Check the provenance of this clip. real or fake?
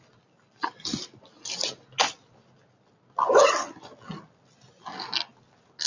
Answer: real